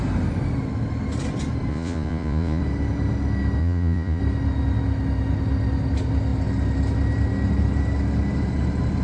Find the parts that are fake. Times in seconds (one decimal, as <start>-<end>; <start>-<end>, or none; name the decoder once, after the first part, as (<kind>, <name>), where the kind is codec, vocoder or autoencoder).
1.7-2.6 (vocoder, Vocos); 3.6-4.2